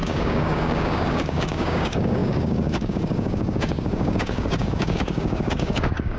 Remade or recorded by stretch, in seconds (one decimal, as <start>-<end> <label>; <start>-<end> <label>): 0.0-6.2 remade